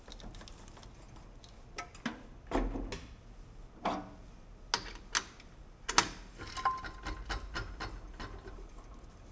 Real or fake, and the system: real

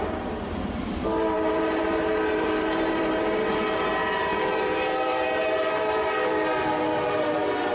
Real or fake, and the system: fake, vocoder, BigVGAN v2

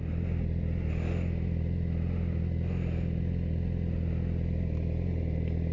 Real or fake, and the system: real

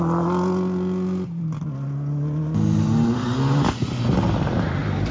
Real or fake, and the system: real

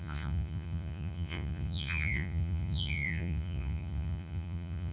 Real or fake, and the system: fake, vocoder, Vocos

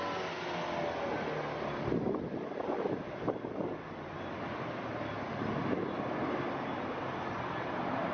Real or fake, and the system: real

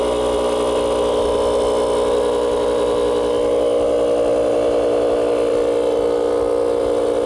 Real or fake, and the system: real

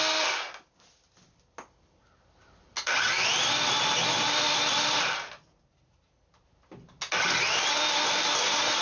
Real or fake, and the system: real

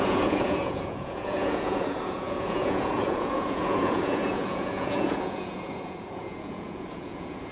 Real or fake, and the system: fake, vocoder, Vocos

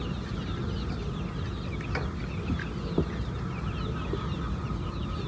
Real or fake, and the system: real